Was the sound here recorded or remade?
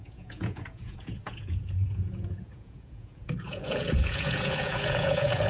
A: remade